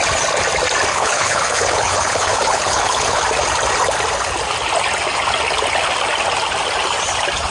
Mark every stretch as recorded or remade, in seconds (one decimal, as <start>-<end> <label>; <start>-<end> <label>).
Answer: 0.0-0.9 recorded; 0.9-3.2 remade; 3.2-7.5 recorded